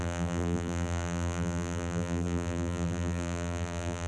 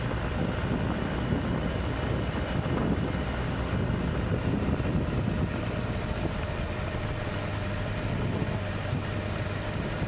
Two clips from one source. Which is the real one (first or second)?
second